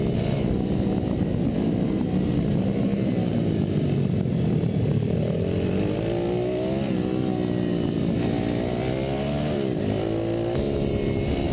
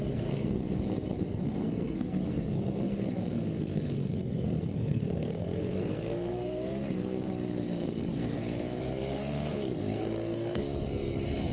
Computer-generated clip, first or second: second